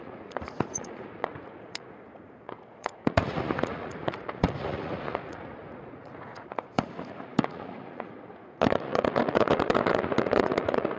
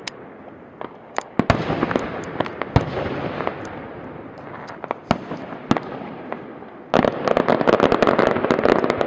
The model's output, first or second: first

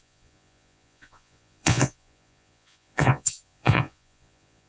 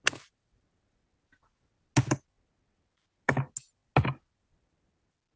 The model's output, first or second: first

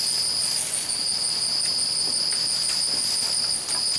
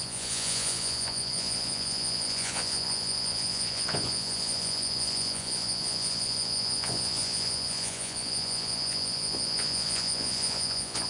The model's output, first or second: second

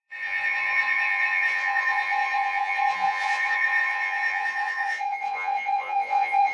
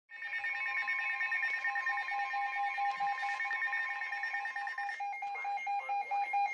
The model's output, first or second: first